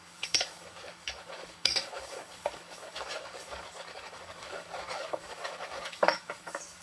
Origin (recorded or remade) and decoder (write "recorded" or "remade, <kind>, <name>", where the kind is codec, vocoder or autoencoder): remade, codec, DAC